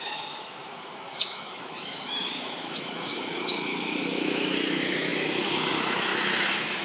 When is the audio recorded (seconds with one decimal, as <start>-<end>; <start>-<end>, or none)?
none